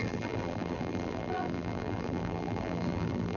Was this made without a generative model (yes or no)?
no